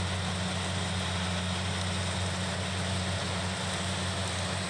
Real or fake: real